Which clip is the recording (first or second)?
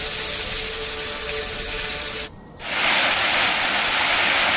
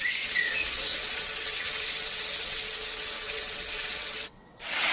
first